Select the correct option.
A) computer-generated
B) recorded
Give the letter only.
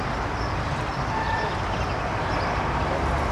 B